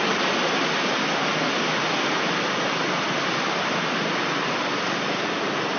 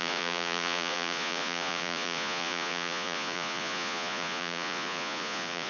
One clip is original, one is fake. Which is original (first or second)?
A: first